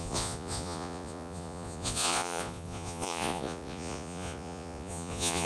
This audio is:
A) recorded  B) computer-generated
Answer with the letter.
B